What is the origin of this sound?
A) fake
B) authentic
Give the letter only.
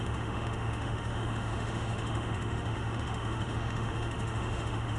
A